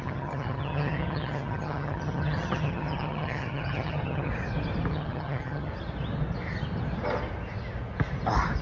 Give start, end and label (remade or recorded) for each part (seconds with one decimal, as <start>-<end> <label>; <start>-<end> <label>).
0.0-4.3 remade; 4.3-4.9 recorded; 4.9-5.7 remade; 5.7-8.6 recorded